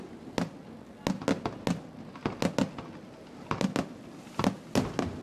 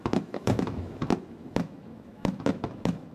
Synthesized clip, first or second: second